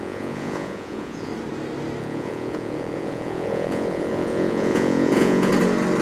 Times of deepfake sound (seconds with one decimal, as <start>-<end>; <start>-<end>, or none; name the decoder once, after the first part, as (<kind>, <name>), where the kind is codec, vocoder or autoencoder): 0.0-1.3 (vocoder, Vocos); 2.0-5.5